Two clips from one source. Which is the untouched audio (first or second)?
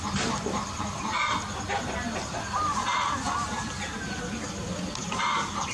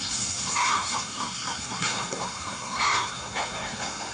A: first